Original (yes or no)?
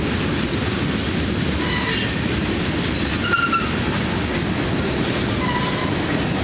yes